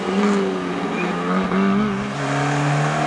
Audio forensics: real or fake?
real